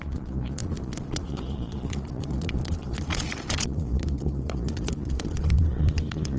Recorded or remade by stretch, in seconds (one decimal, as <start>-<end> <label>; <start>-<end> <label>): 0.0-6.4 remade

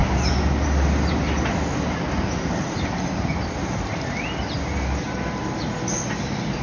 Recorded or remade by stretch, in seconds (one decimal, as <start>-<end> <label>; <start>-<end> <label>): 0.0-6.6 recorded